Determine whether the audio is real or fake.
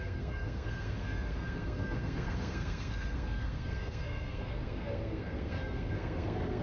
fake